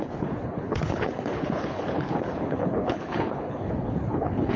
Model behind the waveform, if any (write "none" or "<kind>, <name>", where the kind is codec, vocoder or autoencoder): codec, HILCodec